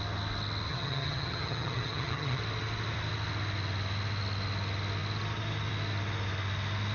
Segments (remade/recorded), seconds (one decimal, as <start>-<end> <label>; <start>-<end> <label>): 0.0-0.7 recorded; 0.7-2.4 remade; 2.4-6.9 recorded